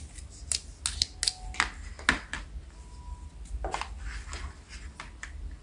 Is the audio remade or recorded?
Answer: recorded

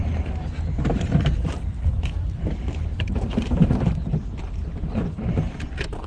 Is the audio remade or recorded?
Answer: remade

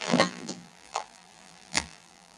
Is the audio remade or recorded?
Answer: remade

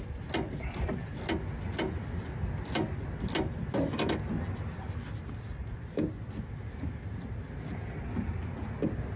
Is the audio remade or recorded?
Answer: recorded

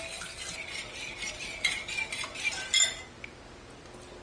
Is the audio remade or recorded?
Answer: recorded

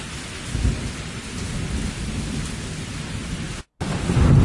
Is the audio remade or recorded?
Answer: recorded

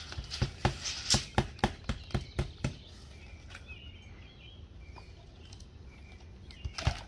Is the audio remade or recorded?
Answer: recorded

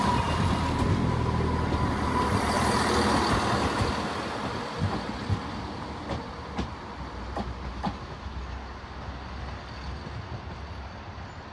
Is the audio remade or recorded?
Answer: recorded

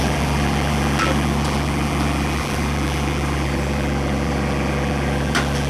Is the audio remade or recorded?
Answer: remade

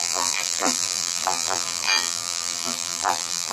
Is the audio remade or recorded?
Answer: remade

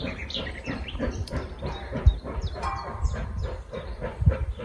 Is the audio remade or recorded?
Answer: remade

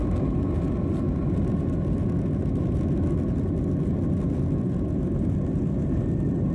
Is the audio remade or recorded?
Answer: recorded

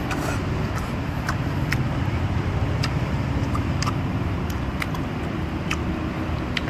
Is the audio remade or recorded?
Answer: remade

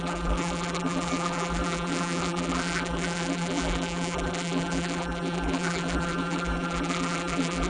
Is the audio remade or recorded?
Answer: remade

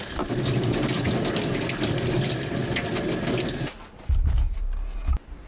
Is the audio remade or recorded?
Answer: recorded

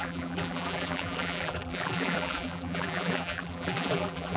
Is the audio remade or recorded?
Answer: remade